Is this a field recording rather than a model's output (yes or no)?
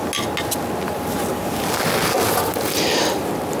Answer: yes